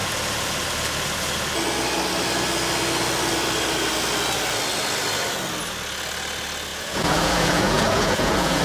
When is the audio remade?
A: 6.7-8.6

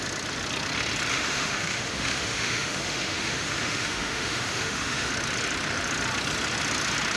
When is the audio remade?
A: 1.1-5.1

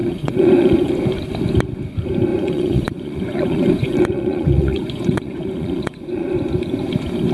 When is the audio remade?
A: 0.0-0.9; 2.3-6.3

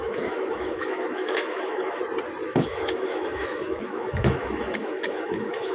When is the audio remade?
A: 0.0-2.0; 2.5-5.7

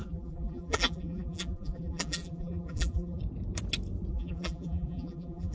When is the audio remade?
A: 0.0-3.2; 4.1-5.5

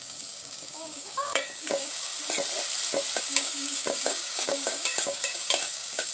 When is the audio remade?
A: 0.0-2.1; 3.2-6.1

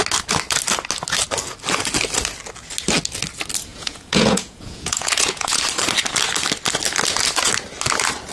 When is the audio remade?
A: 3.7-5.6